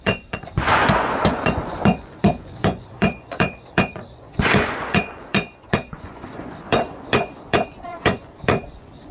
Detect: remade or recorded remade